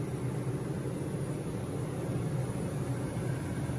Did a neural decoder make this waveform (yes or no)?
no